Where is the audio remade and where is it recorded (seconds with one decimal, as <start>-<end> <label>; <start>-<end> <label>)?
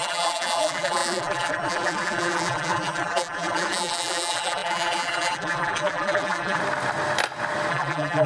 0.0-6.6 remade; 6.6-7.7 recorded; 7.7-8.3 remade